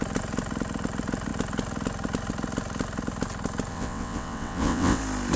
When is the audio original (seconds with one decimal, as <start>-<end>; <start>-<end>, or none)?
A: 0.0-3.7; 5.0-5.4